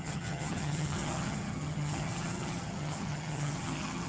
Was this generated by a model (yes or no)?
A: yes